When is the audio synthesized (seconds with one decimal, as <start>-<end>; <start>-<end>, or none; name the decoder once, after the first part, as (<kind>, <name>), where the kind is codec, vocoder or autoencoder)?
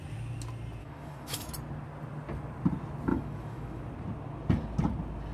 0.8-1.5 (autoencoder, DAC-VAE); 3.1-3.8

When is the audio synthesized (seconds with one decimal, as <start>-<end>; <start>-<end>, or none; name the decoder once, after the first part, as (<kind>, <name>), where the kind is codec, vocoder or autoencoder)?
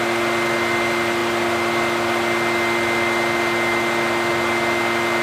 none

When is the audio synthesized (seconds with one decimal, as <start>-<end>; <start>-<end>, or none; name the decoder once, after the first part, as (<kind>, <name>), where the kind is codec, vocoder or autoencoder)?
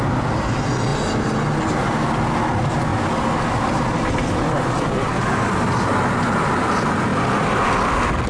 none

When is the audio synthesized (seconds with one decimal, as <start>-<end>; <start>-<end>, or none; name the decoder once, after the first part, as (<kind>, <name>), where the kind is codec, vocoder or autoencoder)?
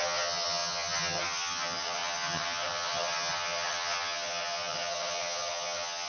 0.0-6.1 (vocoder, HiFi-GAN)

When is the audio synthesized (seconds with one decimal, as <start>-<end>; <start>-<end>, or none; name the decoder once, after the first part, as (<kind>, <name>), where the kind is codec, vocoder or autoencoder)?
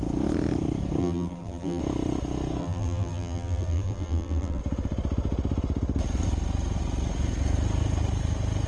1.0-1.8 (vocoder, BigVGAN v2); 2.6-4.6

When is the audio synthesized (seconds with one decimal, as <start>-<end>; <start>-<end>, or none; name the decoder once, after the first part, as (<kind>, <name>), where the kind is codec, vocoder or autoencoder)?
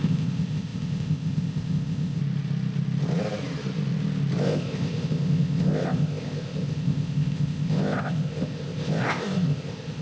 0.0-2.2 (codec, ZipCodec); 4.4-10.0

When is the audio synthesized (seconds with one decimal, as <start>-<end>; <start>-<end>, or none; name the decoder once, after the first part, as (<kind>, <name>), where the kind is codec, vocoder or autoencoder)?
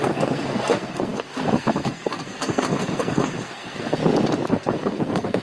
0.0-4.0 (codec, SNAC); 4.5-5.4